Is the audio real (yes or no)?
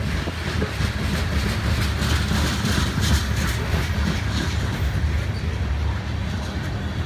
yes